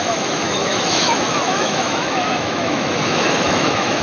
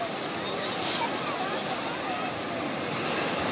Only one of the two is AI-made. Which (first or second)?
first